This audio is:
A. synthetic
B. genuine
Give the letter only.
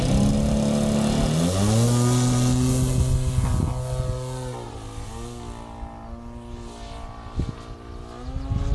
B